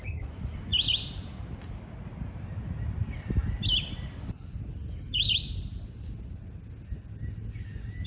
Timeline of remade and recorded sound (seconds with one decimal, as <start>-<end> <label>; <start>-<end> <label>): 0.0-8.1 recorded

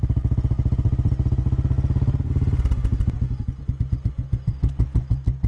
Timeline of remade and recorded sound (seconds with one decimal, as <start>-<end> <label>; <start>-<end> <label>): 0.0-5.5 recorded

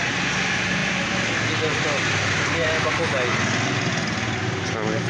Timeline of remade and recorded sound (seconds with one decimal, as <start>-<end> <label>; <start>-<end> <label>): 0.0-5.1 recorded

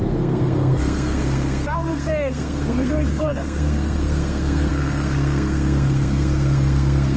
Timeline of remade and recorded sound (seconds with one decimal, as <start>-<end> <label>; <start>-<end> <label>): 0.0-7.2 remade

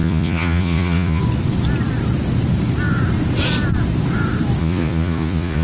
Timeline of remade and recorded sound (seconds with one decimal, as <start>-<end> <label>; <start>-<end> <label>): 0.0-1.2 remade; 1.2-4.6 recorded; 4.6-5.6 remade

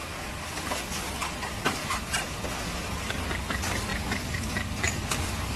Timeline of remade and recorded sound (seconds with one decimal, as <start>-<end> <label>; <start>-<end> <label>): 0.0-1.8 remade; 1.8-2.5 recorded; 2.5-5.6 remade

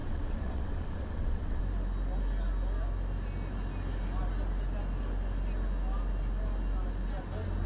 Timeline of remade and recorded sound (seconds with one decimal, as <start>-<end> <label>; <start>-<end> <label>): 0.0-1.6 remade; 1.6-7.7 recorded

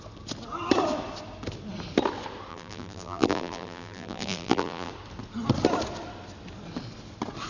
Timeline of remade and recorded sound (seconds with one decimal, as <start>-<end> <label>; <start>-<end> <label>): 0.0-2.5 recorded; 2.5-4.9 remade; 4.9-7.5 recorded